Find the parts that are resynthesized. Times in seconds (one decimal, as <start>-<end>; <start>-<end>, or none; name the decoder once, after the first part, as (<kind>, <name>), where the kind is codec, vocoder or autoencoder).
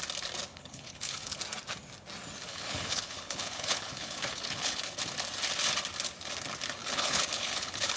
0.5-1.4 (codec, HILCodec); 2.5-4.8; 6.8-8.0